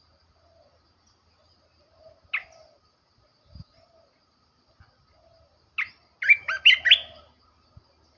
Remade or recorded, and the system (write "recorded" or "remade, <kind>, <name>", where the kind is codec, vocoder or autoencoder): recorded